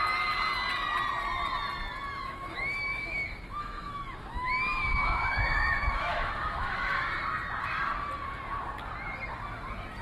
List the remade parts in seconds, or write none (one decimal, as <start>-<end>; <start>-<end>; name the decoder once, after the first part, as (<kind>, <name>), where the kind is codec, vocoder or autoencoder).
2.2-7.0 (autoencoder, DAC-VAE)